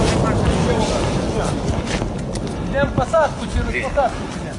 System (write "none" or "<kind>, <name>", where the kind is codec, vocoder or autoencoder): none